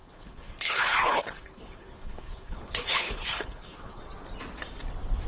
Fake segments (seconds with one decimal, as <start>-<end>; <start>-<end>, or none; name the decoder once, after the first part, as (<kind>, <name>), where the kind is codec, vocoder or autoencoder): 0.0-4.0 (codec, HILCodec)